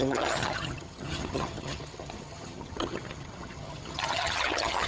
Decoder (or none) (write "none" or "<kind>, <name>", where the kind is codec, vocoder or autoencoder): vocoder, HiFi-GAN